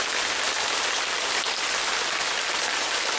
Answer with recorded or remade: recorded